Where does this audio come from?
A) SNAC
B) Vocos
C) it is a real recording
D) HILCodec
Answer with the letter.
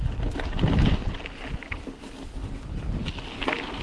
C